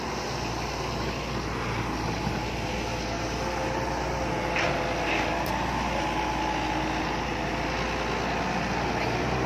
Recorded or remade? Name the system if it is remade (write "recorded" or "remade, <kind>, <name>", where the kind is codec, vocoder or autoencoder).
recorded